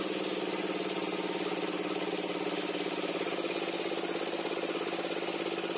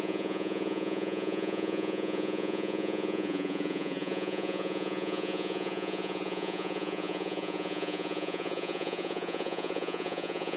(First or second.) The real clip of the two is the first